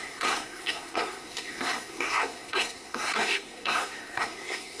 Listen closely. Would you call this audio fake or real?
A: fake